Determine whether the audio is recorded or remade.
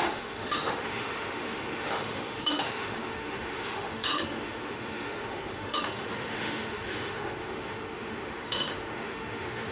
remade